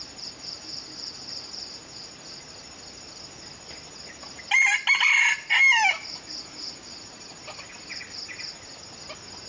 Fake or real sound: real